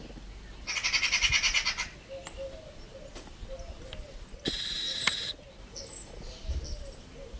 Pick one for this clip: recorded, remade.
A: recorded